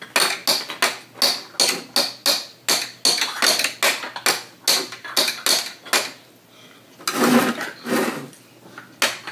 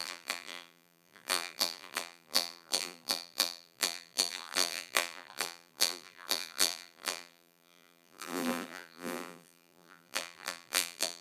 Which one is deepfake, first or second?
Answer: second